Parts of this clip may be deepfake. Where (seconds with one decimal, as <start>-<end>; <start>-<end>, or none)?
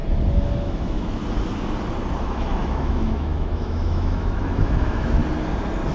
0.6-1.2; 2.2-5.2